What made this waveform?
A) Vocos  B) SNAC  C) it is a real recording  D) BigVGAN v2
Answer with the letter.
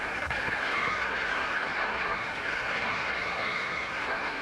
B